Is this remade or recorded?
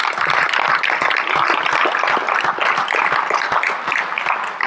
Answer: recorded